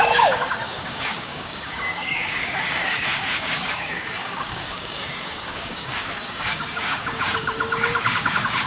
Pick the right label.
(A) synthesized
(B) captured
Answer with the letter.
A